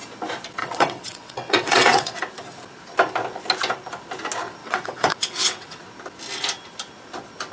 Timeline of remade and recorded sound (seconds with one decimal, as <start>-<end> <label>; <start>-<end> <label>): 0.0-0.6 recorded; 0.6-2.2 remade; 2.2-4.6 recorded; 4.6-5.8 remade; 5.8-7.5 recorded